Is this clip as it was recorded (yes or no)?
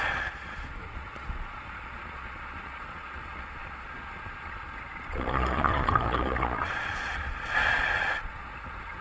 no